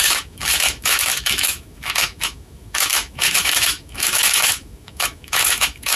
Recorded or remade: remade